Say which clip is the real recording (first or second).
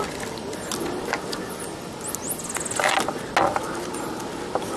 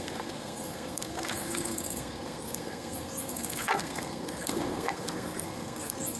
first